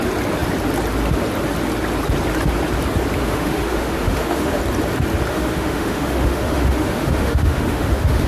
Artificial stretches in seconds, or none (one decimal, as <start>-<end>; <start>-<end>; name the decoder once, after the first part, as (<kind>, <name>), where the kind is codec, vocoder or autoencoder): 3.2-4.6 (autoencoder, DAC-VAE); 5.3-8.3